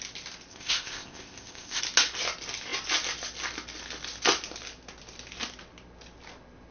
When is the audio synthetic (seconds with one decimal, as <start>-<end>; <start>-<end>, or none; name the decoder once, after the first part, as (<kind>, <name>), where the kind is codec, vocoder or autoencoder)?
0.5-1.8 (codec, ZipCodec)